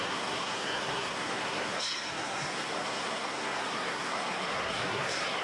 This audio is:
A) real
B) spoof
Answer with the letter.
B